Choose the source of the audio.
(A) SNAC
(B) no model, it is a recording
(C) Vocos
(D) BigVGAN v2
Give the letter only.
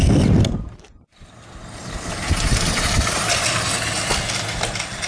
B